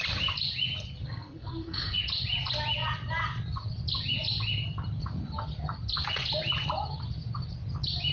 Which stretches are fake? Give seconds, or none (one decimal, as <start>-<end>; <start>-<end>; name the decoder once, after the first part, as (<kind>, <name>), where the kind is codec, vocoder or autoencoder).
1.0-2.0 (codec, SNAC)